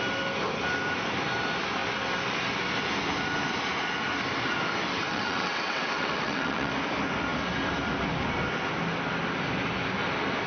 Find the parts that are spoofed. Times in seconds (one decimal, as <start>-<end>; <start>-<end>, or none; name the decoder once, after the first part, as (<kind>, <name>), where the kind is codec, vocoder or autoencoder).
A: 5.1-6.7 (vocoder, WaveNeXt)